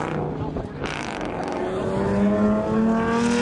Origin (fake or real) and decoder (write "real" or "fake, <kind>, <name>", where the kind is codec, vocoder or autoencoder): real